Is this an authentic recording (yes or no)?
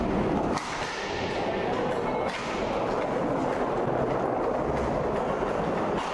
yes